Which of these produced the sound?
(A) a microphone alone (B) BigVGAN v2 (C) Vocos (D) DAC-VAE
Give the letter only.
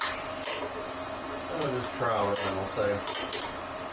B